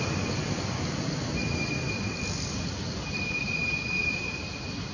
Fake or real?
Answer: real